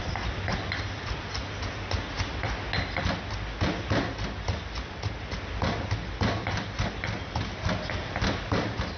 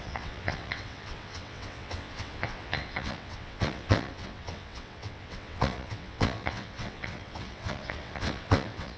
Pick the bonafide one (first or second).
first